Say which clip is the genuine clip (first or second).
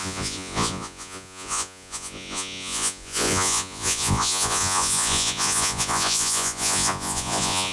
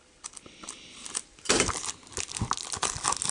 second